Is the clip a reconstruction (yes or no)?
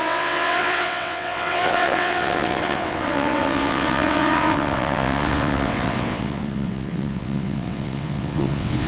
yes